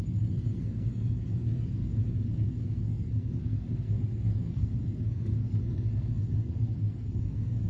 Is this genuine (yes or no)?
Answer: no